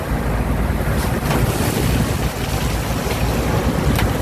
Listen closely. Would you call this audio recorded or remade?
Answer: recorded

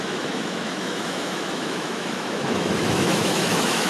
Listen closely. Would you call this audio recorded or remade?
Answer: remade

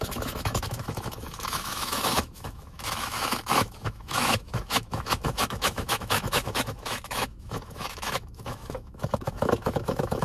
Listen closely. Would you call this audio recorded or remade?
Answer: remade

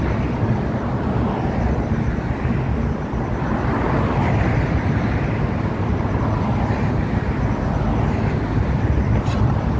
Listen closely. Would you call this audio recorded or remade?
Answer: recorded